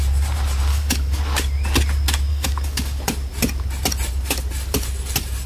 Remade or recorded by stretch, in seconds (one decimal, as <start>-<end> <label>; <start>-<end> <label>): 0.0-0.7 recorded; 0.7-1.2 remade; 1.2-2.3 recorded; 2.3-3.0 remade; 3.0-5.5 recorded